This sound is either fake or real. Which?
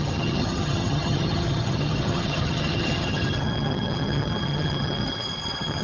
fake